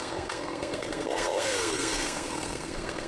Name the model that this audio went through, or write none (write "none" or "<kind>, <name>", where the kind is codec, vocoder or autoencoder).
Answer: codec, SNAC